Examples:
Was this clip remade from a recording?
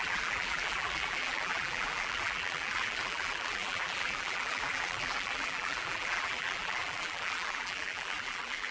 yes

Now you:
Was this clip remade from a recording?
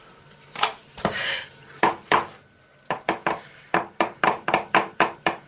yes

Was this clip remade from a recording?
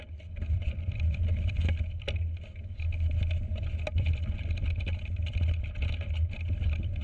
no